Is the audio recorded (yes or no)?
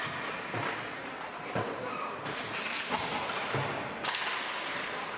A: yes